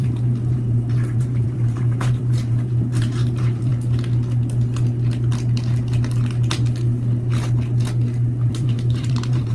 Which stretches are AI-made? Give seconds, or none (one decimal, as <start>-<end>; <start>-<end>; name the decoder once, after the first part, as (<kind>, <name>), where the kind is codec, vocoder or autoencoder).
0.0-3.7 (vocoder, BigVGAN v2); 8.5-9.5